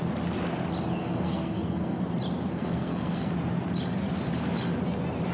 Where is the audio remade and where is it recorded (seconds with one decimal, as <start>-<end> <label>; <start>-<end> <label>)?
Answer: 0.0-1.0 recorded; 1.0-2.0 remade; 2.0-2.5 recorded; 2.5-3.3 remade; 3.3-5.3 recorded